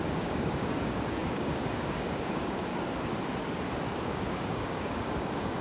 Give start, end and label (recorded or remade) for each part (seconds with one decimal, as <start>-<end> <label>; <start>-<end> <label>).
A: 0.0-2.7 remade; 2.7-4.0 recorded; 4.0-5.6 remade